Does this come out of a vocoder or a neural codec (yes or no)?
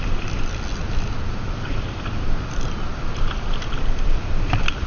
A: no